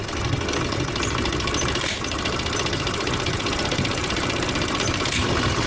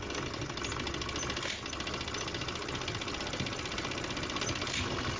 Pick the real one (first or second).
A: second